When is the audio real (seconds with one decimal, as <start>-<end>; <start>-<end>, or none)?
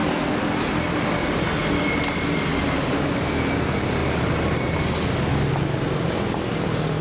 0.0-2.5; 3.0-7.0